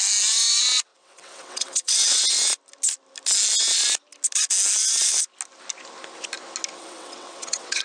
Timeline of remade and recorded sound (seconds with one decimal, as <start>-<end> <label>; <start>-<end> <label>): 0.0-0.9 recorded; 0.9-2.2 remade; 2.2-6.7 recorded; 6.7-7.8 remade